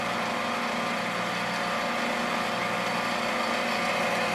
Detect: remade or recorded recorded